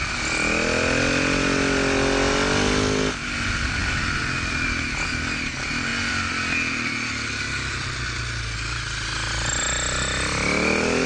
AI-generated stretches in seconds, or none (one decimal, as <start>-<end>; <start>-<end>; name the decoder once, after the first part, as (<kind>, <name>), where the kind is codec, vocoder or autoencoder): none